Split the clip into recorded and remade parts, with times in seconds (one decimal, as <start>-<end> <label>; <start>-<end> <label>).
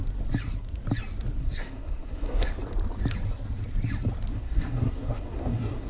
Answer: 0.0-1.4 recorded; 1.4-2.5 remade; 2.5-4.3 recorded; 4.3-5.9 remade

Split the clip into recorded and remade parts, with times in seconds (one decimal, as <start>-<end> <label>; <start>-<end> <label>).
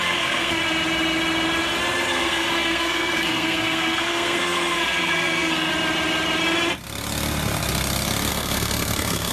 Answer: 0.0-0.6 remade; 0.6-2.1 recorded; 2.1-5.7 remade; 5.7-8.3 recorded; 8.3-9.3 remade